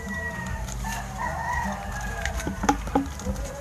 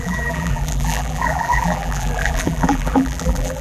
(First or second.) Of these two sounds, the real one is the first